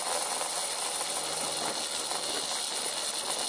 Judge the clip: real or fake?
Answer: real